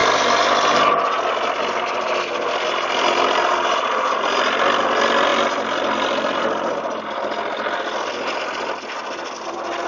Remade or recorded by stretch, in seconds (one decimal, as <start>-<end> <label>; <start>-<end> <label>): 0.0-9.9 recorded